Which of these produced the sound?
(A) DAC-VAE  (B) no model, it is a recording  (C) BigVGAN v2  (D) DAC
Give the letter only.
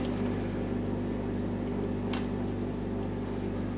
B